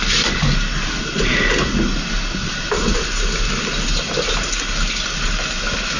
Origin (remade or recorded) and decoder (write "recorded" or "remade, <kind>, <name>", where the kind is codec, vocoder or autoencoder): recorded